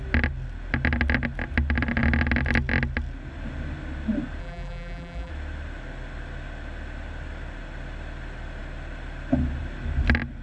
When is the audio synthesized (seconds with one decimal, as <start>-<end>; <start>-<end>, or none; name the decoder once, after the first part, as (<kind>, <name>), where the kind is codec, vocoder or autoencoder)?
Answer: 4.4-5.3 (vocoder, BigVGAN v2)